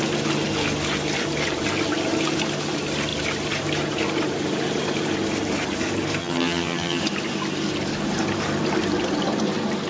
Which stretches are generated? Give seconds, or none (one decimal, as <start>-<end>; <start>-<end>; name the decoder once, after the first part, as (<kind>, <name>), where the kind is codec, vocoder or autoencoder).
6.2-7.0 (vocoder, HiFi-GAN)